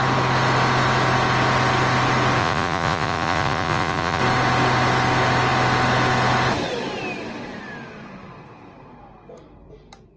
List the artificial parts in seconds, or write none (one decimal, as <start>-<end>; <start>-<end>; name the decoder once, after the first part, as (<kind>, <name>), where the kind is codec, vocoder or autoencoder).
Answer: 2.4-4.2 (vocoder, Vocos)